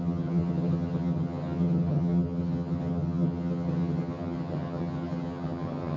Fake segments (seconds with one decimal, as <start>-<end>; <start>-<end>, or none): 0.0-6.0